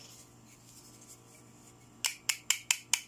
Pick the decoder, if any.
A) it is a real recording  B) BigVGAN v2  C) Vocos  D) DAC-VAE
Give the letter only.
A